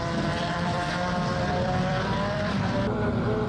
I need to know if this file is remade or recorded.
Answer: remade